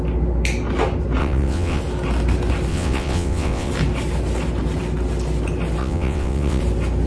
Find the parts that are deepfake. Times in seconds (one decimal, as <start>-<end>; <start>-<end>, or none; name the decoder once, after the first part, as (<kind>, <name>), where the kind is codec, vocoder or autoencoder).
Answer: 1.2-1.8 (vocoder, WaveNeXt); 2.7-3.7; 5.8-6.6